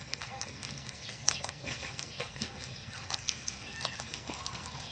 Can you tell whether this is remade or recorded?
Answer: remade